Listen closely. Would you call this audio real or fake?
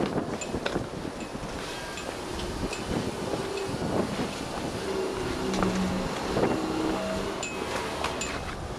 real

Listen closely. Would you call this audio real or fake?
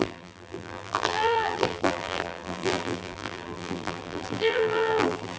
fake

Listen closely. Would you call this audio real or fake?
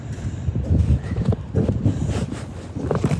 real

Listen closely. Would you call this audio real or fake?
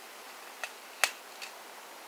real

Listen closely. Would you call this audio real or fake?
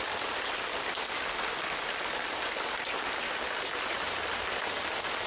real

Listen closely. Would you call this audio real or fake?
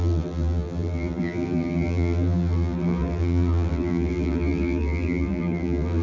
fake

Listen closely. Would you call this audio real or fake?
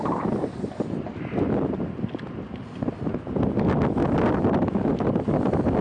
real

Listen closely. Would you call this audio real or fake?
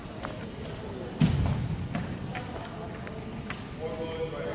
real